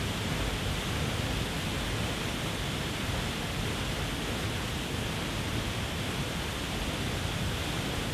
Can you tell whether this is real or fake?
real